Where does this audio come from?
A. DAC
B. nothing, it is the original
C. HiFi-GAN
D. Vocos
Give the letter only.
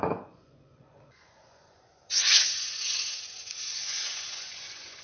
D